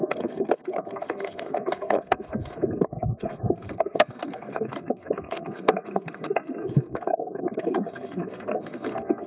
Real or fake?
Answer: fake